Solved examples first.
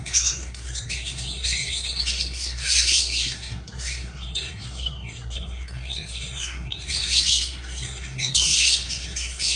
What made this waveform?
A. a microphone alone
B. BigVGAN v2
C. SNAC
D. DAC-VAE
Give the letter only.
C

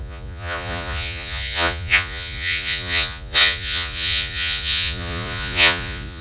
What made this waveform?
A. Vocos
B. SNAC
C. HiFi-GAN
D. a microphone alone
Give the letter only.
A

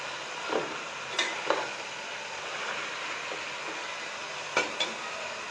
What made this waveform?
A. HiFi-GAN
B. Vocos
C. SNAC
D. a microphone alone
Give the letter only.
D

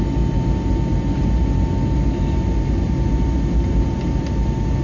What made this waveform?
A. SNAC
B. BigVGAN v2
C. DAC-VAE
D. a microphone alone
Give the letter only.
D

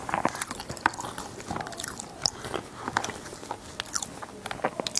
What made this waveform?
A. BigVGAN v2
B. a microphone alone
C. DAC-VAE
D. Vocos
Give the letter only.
B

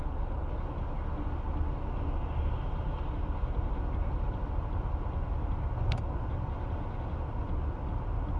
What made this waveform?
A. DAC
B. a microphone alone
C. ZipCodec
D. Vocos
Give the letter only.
B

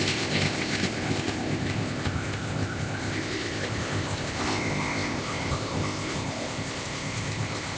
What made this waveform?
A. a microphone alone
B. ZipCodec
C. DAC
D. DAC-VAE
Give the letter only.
B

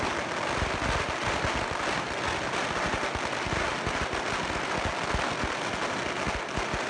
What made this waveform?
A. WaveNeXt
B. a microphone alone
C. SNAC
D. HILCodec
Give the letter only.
B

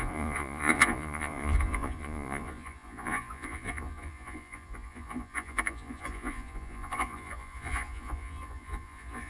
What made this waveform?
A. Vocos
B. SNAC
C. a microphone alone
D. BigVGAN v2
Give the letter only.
A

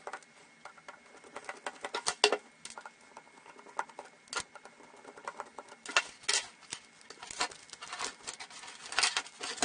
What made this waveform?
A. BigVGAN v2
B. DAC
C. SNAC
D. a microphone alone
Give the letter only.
D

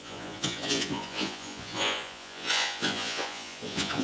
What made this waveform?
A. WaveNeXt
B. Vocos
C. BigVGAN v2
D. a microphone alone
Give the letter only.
B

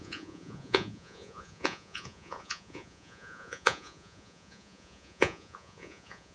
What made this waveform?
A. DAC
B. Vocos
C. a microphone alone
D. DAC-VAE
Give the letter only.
B